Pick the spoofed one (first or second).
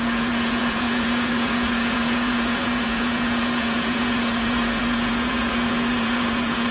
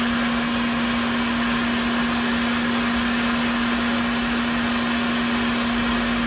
first